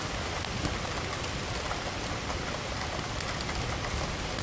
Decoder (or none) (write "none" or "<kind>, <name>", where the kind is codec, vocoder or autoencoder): none